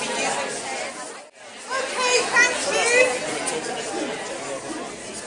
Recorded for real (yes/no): yes